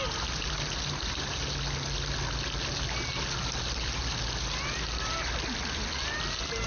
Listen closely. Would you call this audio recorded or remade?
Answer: recorded